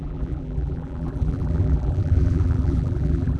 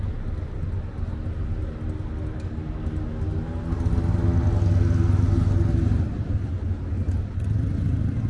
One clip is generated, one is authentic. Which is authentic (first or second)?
second